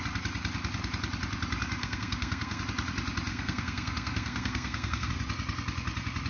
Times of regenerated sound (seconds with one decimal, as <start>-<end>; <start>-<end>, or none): 1.8-2.6; 3.3-5.1